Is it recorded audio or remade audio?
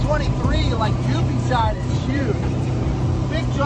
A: remade